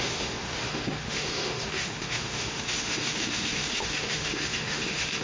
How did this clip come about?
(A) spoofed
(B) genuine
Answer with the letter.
A